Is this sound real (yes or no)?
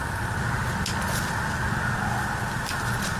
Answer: yes